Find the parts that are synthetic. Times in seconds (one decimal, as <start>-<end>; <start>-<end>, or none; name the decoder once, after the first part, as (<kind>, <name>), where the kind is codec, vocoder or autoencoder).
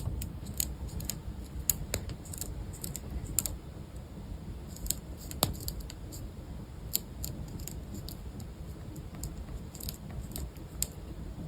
none